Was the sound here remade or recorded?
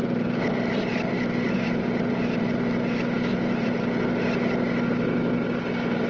recorded